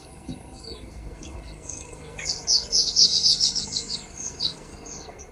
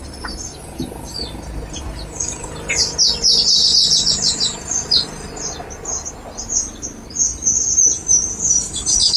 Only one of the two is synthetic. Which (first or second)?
first